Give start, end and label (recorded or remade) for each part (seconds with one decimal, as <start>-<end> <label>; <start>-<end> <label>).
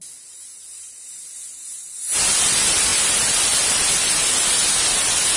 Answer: 0.0-5.4 recorded